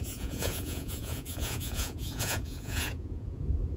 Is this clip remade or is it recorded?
remade